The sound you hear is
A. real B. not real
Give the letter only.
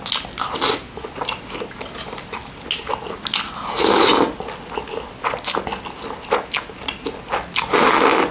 A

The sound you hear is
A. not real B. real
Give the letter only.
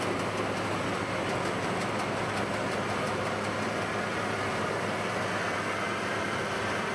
B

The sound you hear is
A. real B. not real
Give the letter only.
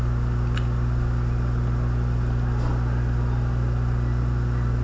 A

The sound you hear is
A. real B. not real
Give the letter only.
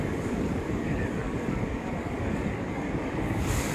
B